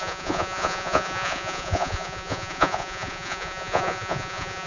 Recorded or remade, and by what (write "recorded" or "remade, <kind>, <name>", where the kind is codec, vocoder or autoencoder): remade, vocoder, Vocos